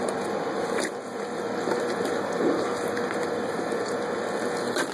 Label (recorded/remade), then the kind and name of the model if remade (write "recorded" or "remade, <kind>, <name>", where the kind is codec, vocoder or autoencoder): recorded